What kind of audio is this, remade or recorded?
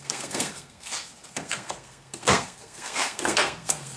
remade